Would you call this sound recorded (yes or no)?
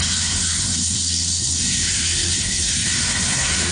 no